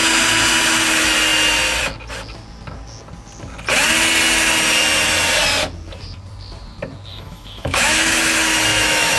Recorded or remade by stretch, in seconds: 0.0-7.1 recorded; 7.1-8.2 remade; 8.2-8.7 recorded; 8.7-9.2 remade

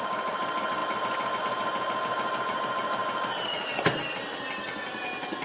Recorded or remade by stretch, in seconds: 0.0-5.4 recorded

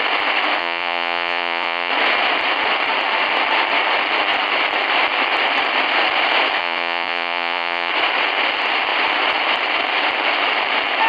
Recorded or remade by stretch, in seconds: 0.0-0.6 recorded; 0.6-1.9 remade; 1.9-6.6 recorded; 6.6-7.9 remade; 7.9-11.1 recorded

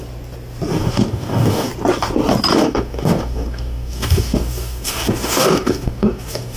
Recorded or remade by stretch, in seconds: 0.0-0.8 recorded; 0.8-1.7 remade; 1.7-2.5 recorded; 2.5-6.6 remade